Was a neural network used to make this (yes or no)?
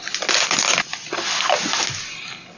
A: no